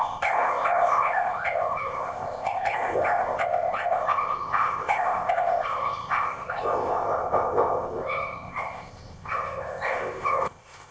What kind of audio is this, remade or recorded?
remade